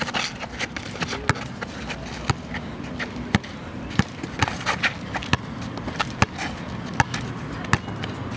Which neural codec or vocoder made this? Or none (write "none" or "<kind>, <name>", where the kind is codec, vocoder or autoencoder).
none